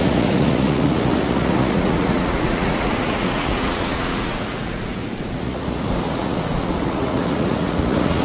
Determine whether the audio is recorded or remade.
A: remade